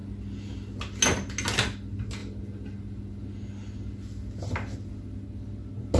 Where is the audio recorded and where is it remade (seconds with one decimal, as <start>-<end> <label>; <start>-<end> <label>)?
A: 0.0-6.0 recorded